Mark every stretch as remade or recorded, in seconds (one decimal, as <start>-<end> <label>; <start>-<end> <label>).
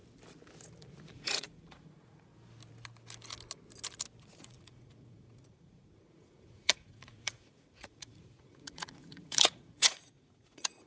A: 0.0-1.1 recorded; 1.1-2.3 remade; 2.3-4.2 recorded; 4.2-10.9 remade